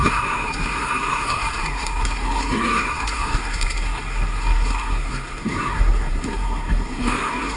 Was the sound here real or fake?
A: fake